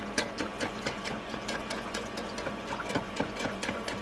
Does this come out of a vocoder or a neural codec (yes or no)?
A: yes